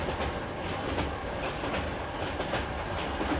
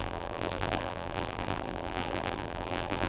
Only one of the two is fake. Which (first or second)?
second